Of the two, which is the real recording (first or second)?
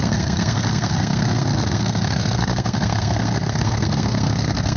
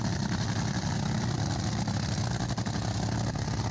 second